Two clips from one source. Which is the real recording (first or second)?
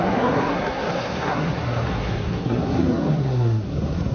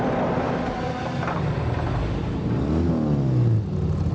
second